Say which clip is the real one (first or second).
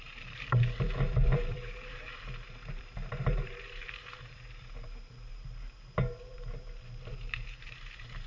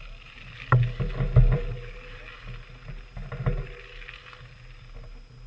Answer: second